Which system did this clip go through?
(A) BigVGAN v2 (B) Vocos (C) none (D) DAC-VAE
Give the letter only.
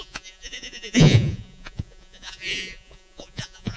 B